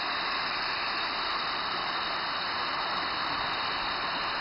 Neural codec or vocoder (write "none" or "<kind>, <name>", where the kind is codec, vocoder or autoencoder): none